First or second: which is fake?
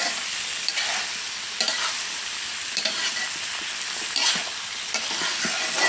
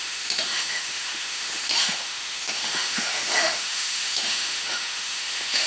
second